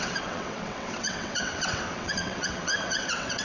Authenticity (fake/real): fake